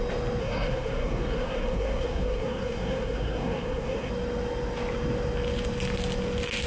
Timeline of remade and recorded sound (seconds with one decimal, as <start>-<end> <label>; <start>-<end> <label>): 0.0-0.4 recorded; 0.4-4.1 remade; 4.1-6.7 recorded